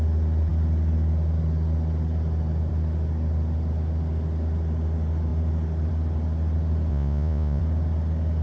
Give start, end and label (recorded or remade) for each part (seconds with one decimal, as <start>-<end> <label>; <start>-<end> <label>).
0.0-6.9 recorded; 6.9-7.6 remade; 7.6-8.4 recorded